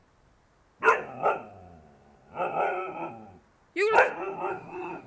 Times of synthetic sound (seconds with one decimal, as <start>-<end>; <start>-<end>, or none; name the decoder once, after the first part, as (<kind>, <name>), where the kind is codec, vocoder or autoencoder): 4.5-5.1 (codec, SNAC)